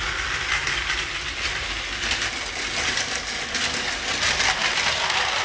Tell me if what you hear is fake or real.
real